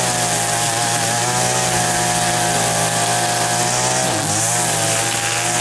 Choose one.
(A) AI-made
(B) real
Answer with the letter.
B